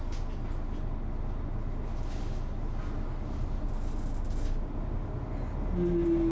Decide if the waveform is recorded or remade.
recorded